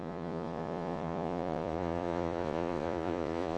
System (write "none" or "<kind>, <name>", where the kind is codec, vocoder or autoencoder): vocoder, Vocos